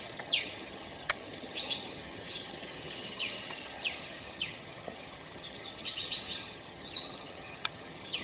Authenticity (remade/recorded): remade